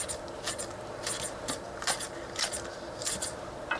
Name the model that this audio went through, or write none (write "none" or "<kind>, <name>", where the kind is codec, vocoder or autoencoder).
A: none